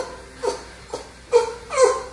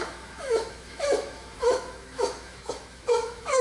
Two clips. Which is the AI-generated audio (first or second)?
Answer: second